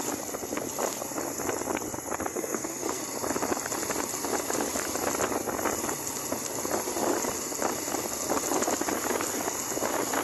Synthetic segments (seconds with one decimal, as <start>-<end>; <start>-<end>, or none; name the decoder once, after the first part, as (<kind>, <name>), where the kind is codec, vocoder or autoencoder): 2.3-3.0 (codec, SNAC)